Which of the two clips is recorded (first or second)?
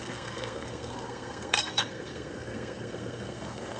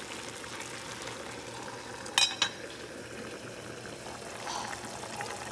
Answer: second